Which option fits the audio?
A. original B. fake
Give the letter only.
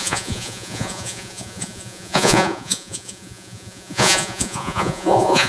B